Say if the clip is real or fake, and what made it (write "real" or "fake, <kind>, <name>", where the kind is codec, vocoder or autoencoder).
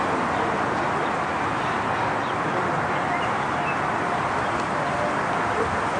real